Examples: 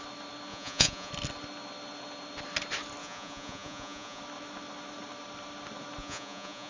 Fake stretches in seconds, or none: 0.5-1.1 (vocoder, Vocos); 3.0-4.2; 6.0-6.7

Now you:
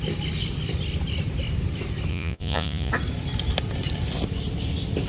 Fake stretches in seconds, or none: 2.1-2.9 (vocoder, Vocos)

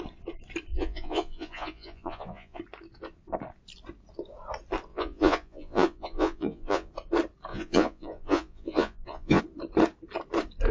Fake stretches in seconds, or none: 0.7-2.6 (vocoder, Vocos); 4.9-6.9; 7.5-9.4

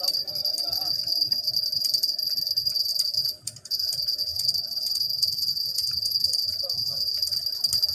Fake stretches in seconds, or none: 2.9-7.1 (vocoder, Vocos)

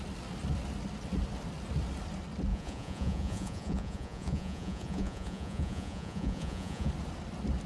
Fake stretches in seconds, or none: 2.5-6.9 (vocoder, Vocos)

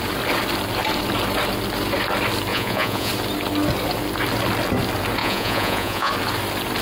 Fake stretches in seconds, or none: 2.5-3.1 (vocoder, Vocos); 5.2-6.1

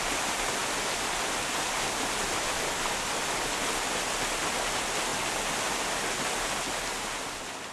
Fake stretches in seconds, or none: none